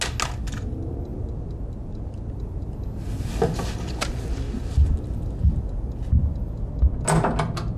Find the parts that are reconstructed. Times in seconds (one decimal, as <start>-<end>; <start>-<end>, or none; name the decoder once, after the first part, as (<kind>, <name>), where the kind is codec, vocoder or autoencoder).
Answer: 1.1-4.5 (vocoder, BigVGAN v2)